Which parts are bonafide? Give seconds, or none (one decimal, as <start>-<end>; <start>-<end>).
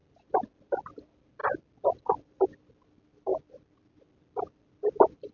0.0-5.3